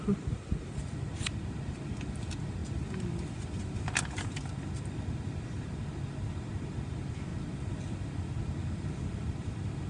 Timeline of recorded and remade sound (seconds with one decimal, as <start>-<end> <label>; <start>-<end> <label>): 0.0-9.9 recorded